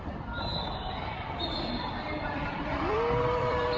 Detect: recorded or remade remade